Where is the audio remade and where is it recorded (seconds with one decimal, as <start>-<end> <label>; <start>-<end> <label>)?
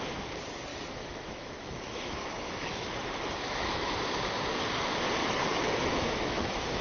0.0-0.7 recorded; 0.7-3.9 remade; 3.9-5.2 recorded; 5.2-6.8 remade